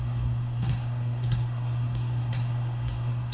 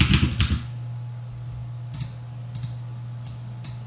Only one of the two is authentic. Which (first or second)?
second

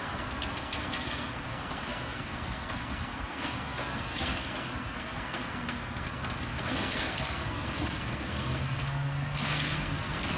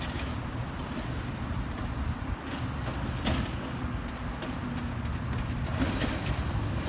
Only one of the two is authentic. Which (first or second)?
second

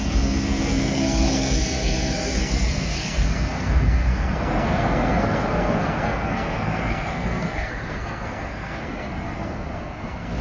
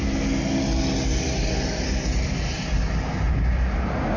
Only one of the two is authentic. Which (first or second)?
second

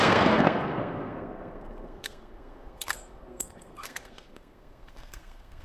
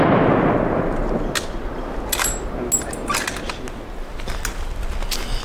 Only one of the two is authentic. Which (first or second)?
second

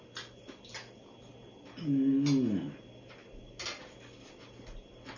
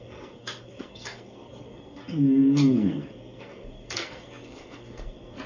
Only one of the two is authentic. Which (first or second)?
first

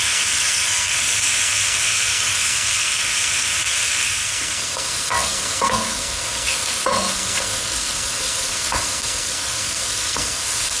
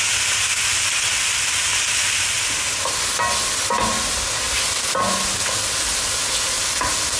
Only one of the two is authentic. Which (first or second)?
second